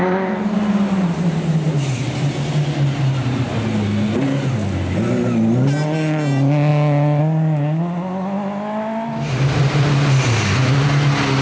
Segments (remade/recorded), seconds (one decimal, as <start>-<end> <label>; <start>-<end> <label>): 0.0-11.4 recorded